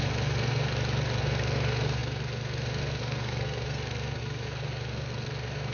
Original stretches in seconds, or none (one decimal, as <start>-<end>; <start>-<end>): 0.7-1.2